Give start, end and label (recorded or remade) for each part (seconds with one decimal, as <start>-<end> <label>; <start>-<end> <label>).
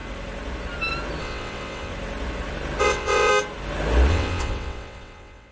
0.0-1.2 recorded; 1.2-1.9 remade; 1.9-2.8 recorded; 2.8-3.3 remade; 3.3-4.1 recorded; 4.1-5.5 remade